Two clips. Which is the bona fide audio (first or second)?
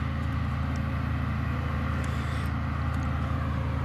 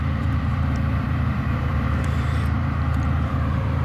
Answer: first